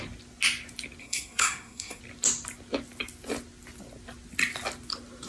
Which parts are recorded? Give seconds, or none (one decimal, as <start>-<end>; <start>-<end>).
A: 0.0-1.0; 2.0-5.3